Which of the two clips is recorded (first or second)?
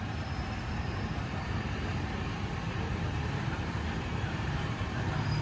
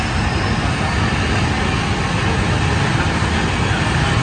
second